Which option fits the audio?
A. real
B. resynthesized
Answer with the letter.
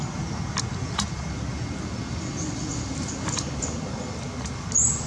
A